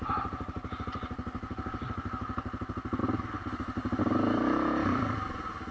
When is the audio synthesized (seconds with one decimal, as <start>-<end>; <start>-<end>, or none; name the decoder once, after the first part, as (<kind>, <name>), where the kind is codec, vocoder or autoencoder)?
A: 0.0-5.7 (vocoder, BigVGAN v2)